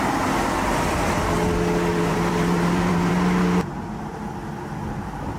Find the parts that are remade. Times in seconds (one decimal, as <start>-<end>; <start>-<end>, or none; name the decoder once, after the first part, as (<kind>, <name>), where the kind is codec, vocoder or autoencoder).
2.1-3.1 (vocoder, BigVGAN v2)